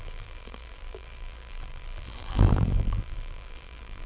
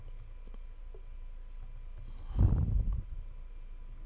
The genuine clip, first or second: second